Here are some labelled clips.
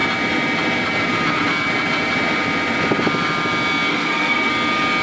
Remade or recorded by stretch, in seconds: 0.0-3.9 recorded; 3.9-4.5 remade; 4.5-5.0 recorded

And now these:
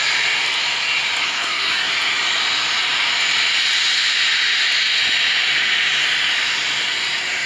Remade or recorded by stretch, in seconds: 0.0-1.2 recorded; 1.2-1.9 remade; 1.9-7.5 recorded

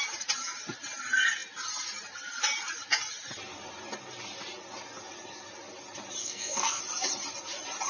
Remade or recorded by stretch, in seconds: 0.0-6.2 recorded; 6.2-6.8 remade; 6.8-7.9 recorded

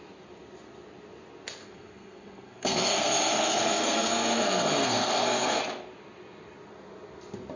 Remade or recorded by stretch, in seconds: 0.0-1.6 recorded; 1.6-5.6 remade; 5.6-7.6 recorded

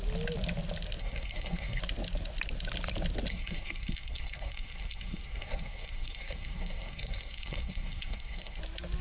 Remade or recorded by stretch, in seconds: 0.0-1.0 recorded; 1.0-1.8 remade; 1.8-3.3 recorded; 3.3-8.6 remade; 8.6-9.0 recorded

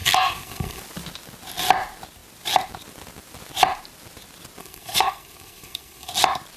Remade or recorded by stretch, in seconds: 0.0-0.8 remade; 0.8-4.6 recorded; 4.6-6.1 remade; 6.1-6.6 recorded